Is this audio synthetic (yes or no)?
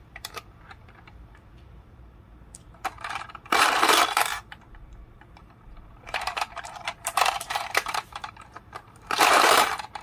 yes